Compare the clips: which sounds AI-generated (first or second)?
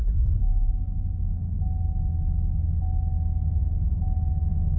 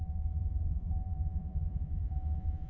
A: second